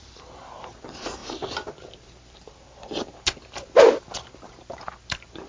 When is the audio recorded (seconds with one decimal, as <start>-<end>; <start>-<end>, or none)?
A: 0.0-5.5

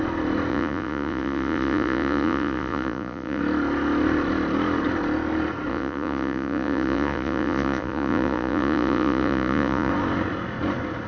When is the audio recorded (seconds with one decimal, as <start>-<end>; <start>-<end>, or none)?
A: 0.0-0.5; 3.4-5.7; 9.9-11.1